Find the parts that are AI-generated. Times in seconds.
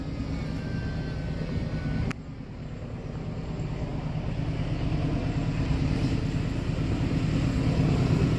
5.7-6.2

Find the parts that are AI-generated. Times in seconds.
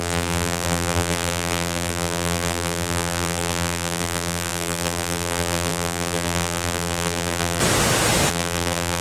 0.0-7.6; 8.3-9.0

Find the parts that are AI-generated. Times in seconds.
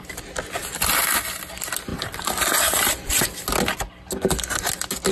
none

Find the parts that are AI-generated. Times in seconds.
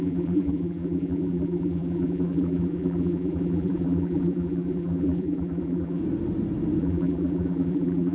0.0-6.0; 6.8-8.1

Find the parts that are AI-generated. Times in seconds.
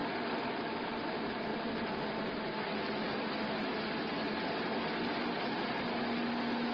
0.0-0.7; 1.5-5.5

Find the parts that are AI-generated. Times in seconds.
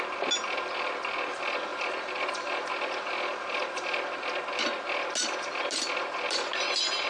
1.7-4.4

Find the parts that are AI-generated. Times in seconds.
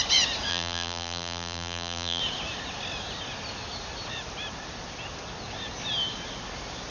0.5-2.2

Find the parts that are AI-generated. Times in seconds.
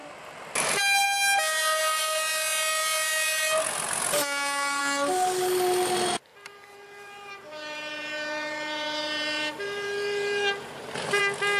6.3-11.2